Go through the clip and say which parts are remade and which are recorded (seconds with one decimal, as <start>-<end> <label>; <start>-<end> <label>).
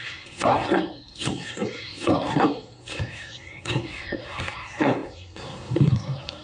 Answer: 0.0-6.4 remade